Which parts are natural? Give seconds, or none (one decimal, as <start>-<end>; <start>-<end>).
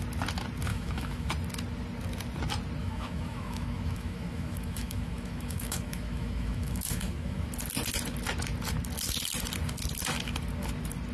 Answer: 0.0-0.7; 1.3-2.8; 7.5-11.1